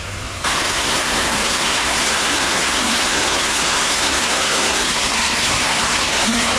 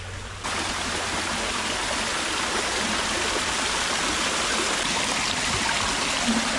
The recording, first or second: second